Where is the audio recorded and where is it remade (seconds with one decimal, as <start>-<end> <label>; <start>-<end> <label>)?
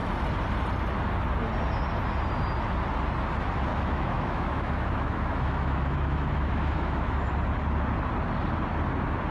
0.0-3.7 recorded; 3.7-7.3 remade; 7.3-9.3 recorded